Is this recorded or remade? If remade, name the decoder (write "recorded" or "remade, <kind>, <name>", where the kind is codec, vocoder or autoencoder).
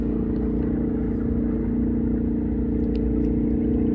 recorded